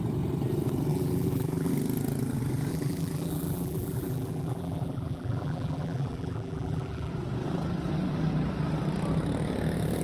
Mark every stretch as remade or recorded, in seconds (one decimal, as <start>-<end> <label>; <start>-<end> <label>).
0.0-0.9 recorded; 0.9-1.7 remade; 1.7-2.7 recorded; 2.7-7.1 remade; 7.1-10.0 recorded